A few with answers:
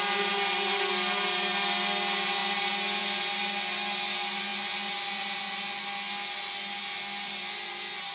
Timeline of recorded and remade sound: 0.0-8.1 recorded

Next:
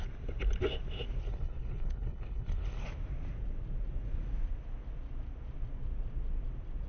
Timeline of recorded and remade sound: 0.0-1.2 recorded; 1.2-2.8 remade; 2.8-6.9 recorded